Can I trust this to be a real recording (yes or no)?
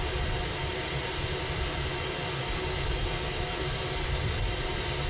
yes